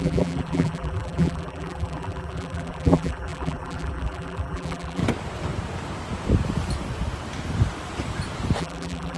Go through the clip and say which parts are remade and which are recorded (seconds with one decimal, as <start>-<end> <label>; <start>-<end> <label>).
0.0-5.0 remade; 5.0-8.6 recorded; 8.6-9.2 remade